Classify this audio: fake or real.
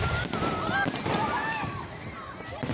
real